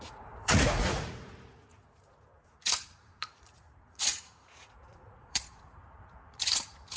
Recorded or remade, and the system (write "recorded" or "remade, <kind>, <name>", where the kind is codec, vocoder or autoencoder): remade, vocoder, Vocos